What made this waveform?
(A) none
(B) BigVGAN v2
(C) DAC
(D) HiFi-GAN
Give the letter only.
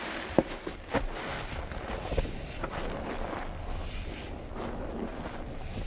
B